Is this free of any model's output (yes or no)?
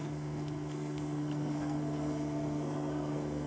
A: no